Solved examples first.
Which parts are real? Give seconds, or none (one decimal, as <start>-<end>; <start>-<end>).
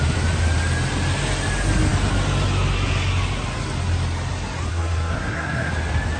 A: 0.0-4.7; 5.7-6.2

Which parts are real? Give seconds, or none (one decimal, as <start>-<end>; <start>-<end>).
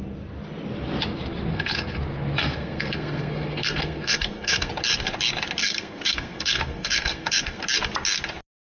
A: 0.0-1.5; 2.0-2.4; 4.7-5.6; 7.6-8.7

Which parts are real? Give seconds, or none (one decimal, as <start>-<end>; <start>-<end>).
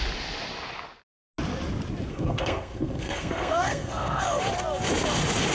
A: 0.0-2.1; 4.4-5.5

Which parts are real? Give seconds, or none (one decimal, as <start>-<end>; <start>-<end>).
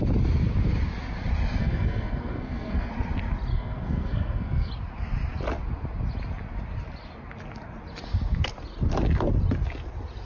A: 0.0-1.6; 2.9-3.5; 4.7-10.3